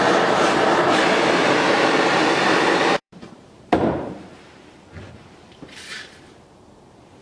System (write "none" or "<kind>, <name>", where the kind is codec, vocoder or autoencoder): vocoder, BigVGAN v2